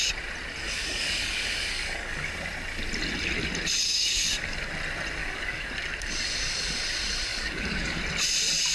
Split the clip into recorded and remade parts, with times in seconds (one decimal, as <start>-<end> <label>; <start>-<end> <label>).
0.0-0.6 recorded; 0.6-2.3 remade; 2.3-3.8 recorded; 3.8-4.7 remade; 4.7-5.2 recorded; 5.2-5.7 remade; 5.7-7.3 recorded; 7.3-8.0 remade; 8.0-8.7 recorded